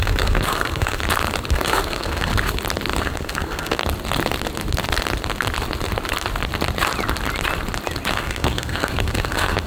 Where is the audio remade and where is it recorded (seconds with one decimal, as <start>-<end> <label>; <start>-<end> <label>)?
0.0-1.0 remade; 1.0-1.5 recorded; 1.5-2.3 remade; 2.3-3.0 recorded; 3.0-3.8 remade; 3.8-8.1 recorded; 8.1-9.7 remade